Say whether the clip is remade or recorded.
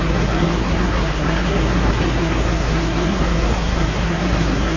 remade